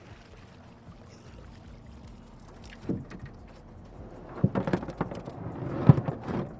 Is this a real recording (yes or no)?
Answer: yes